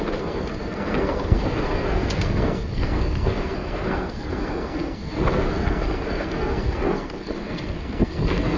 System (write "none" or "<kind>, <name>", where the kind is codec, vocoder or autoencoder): codec, SNAC